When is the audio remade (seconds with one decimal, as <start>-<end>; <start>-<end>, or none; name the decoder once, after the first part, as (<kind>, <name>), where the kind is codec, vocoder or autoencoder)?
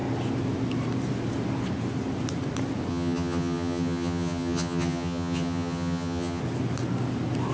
2.9-6.4 (vocoder, HiFi-GAN)